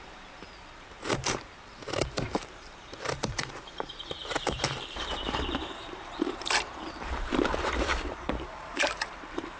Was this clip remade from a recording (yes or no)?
yes